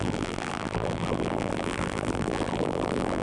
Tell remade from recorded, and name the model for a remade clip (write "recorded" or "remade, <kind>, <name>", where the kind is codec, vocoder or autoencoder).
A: remade, vocoder, BigVGAN v2